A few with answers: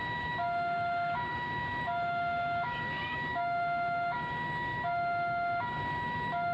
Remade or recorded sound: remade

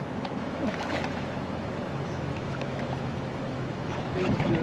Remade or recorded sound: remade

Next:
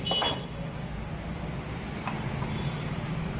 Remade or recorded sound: recorded